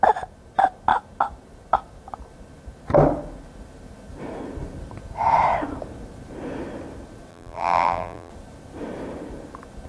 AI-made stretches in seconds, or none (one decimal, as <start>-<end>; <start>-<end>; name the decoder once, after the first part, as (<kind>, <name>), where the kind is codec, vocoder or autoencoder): 7.3-8.3 (vocoder, BigVGAN v2)